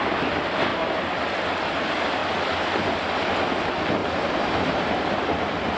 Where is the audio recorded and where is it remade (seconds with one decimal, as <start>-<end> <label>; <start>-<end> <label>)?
0.0-0.7 recorded; 0.7-1.2 remade; 1.2-4.0 recorded; 4.0-5.2 remade; 5.2-5.8 recorded